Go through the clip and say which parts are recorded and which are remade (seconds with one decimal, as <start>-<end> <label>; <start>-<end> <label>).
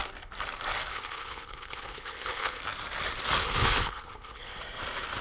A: 0.0-0.9 recorded; 0.9-2.6 remade; 2.6-3.4 recorded; 3.4-4.6 remade; 4.6-5.2 recorded